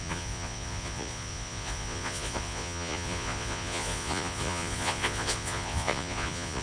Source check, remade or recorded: remade